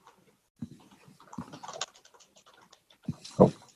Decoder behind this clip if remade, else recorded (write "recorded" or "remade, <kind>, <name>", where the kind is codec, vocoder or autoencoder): recorded